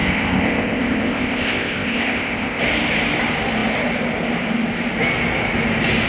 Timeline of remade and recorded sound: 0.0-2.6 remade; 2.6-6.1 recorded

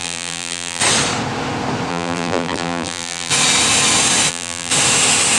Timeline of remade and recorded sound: 0.0-0.8 remade; 0.8-1.9 recorded; 1.9-3.3 remade; 3.3-4.3 recorded; 4.3-4.7 remade; 4.7-5.4 recorded